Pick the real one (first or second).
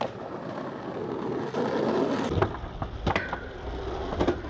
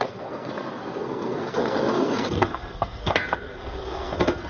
first